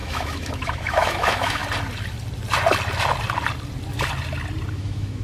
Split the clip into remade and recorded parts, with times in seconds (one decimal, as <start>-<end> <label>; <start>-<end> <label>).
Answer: 0.0-1.6 remade; 1.6-4.7 recorded; 4.7-5.2 remade